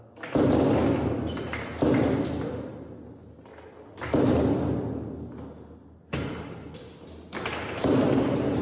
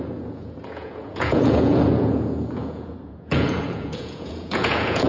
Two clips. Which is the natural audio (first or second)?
first